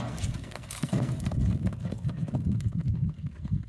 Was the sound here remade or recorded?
remade